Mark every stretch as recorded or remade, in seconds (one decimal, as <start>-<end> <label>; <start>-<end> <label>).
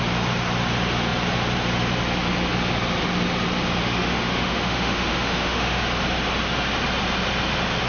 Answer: 0.0-3.8 recorded; 3.8-5.8 remade; 5.8-7.9 recorded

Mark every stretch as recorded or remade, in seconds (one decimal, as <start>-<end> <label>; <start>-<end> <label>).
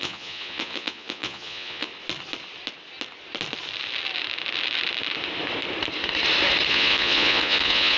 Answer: 0.0-1.9 remade; 1.9-6.7 recorded; 6.7-8.0 remade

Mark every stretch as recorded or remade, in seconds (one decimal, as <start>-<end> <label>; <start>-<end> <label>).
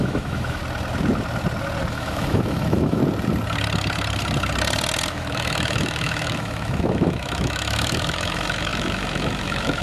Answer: 0.0-0.6 remade; 0.6-1.9 recorded; 1.9-3.0 remade; 3.0-5.1 recorded; 5.1-9.8 remade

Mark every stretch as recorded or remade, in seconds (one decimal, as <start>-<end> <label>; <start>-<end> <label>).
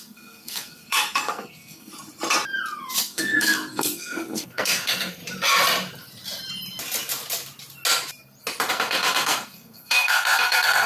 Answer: 0.0-1.9 remade; 1.9-3.0 recorded; 3.0-5.2 remade; 5.2-8.7 recorded; 8.7-10.9 remade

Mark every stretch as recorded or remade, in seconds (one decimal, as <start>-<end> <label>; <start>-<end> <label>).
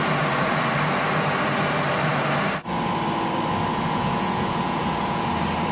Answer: 0.0-3.7 recorded; 3.7-5.3 remade; 5.3-5.7 recorded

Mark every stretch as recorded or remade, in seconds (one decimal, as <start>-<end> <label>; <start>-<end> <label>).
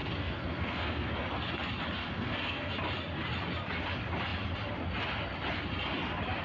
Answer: 0.0-1.1 remade; 1.1-2.0 recorded; 2.0-2.7 remade; 2.7-6.4 recorded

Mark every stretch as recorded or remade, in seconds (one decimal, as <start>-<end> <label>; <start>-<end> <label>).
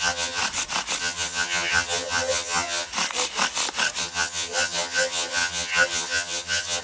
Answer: 0.0-0.4 remade; 0.4-1.0 recorded; 1.0-2.9 remade; 2.9-4.0 recorded; 4.0-6.8 remade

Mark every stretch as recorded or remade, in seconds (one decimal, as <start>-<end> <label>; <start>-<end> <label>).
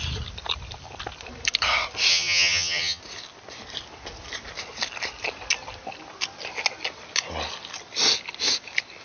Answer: 0.0-2.1 recorded; 2.1-3.0 remade; 3.0-9.0 recorded